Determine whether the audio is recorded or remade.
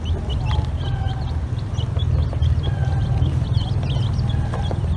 recorded